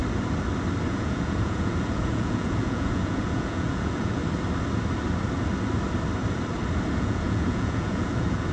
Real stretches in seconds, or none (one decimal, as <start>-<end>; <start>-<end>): 0.0-0.9; 4.2-6.9